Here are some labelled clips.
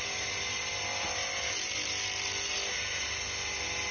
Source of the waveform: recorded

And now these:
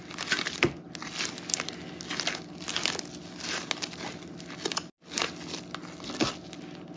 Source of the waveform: recorded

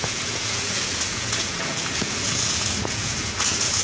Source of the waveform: remade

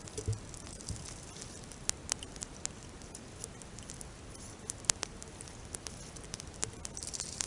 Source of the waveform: recorded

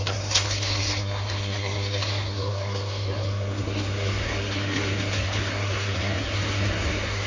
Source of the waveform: remade